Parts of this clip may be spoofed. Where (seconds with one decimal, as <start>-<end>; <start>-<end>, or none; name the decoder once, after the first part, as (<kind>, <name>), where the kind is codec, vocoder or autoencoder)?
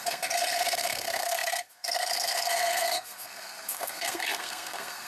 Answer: 0.0-5.1 (codec, SNAC)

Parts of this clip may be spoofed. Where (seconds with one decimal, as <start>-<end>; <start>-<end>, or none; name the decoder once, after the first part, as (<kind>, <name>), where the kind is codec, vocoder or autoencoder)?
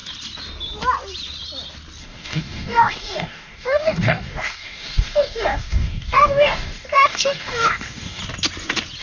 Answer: 2.0-8.2 (codec, DAC)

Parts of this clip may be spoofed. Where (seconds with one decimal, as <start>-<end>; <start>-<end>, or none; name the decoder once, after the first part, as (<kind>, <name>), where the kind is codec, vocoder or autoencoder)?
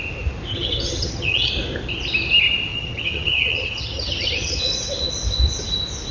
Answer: 0.5-1.5 (vocoder, HiFi-GAN); 2.7-4.6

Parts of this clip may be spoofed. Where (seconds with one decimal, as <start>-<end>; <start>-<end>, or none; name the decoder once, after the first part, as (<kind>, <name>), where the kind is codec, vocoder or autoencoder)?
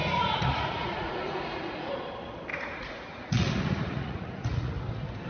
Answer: 0.0-2.0 (vocoder, Vocos); 2.5-4.7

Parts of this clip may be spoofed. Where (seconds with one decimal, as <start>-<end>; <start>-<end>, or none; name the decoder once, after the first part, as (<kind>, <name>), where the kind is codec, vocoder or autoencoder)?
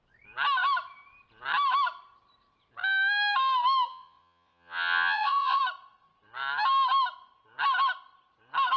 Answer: 3.9-5.6 (vocoder, Vocos)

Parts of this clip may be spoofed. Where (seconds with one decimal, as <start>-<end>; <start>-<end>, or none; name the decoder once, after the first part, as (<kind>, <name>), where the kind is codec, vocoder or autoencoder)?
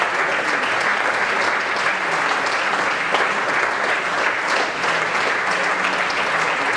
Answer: 0.9-1.4 (vocoder, BigVGAN v2)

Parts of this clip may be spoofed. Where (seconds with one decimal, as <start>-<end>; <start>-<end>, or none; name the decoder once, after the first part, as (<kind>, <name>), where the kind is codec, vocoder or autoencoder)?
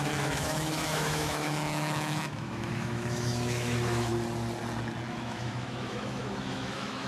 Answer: 0.0-4.1 (autoencoder, DAC-VAE); 5.1-7.1